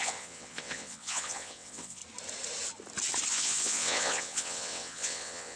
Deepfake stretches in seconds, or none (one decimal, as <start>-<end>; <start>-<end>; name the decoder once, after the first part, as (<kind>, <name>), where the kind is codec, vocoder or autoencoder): 0.0-2.0 (vocoder, WaveNeXt); 3.3-5.6